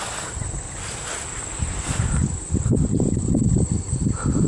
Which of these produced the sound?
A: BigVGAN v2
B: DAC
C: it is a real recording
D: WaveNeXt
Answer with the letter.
C